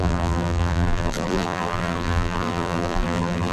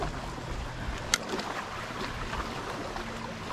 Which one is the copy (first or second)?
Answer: first